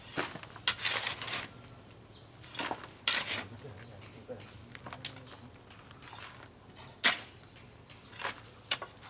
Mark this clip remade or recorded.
recorded